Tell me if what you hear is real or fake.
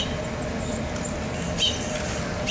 real